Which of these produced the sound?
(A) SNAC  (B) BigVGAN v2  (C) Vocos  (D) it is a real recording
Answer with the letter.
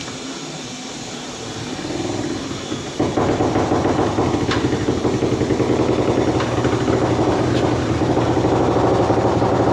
D